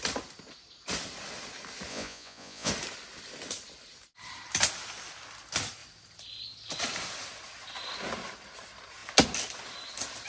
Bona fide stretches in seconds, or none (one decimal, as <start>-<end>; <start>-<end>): 0.0-1.9; 2.7-10.3